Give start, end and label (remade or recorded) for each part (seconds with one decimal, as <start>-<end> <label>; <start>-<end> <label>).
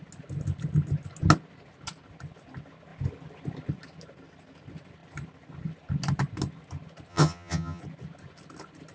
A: 0.0-7.1 recorded; 7.1-7.8 remade; 7.8-8.9 recorded